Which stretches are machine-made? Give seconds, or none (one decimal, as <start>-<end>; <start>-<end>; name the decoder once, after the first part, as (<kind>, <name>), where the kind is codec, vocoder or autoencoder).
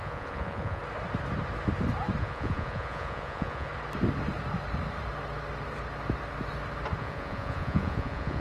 0.0-0.8 (vocoder, Vocos); 2.2-3.7; 7.0-8.4